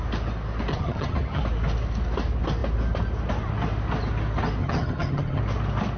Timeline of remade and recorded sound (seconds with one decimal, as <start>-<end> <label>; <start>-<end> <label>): 0.0-0.7 recorded; 0.7-1.4 remade; 1.4-4.6 recorded; 4.6-5.4 remade; 5.4-6.0 recorded